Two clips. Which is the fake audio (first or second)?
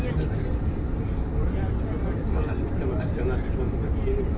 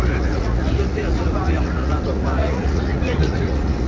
second